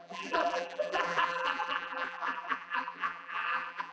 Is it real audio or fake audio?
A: fake